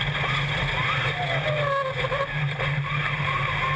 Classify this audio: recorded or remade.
recorded